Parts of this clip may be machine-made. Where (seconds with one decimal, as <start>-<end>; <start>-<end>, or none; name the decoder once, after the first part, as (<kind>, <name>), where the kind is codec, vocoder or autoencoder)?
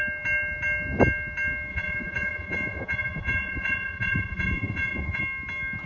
1.7-5.2 (vocoder, Vocos)